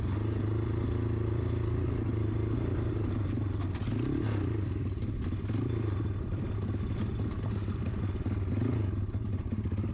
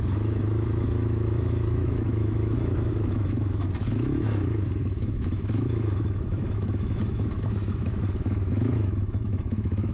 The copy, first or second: second